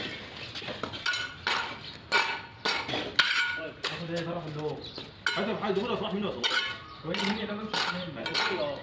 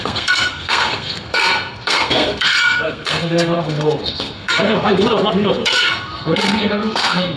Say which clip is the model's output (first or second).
second